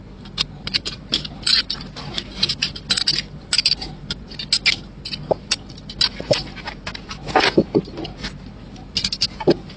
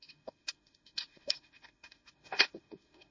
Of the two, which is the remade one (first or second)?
second